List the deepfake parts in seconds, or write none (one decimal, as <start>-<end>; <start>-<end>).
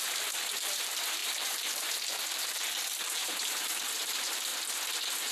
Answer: 0.0-4.5